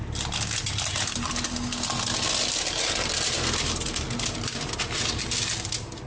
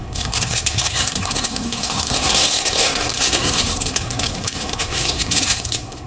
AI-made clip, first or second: second